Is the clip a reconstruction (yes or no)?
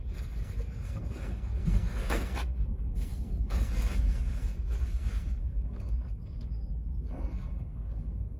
yes